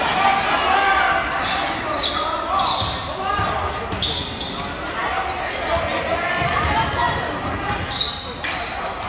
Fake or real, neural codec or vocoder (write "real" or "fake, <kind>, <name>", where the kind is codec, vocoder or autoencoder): real